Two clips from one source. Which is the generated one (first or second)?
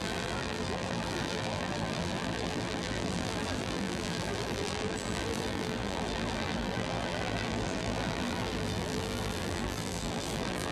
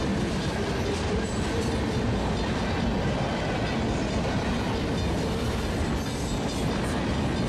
first